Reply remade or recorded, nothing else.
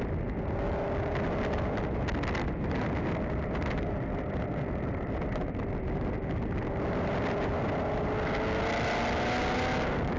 recorded